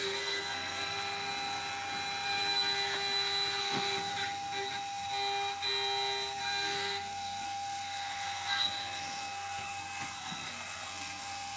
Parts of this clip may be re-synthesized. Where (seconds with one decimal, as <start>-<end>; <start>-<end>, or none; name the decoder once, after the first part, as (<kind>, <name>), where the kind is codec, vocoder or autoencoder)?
0.0-1.3 (codec, SNAC); 3.6-4.1; 6.4-11.6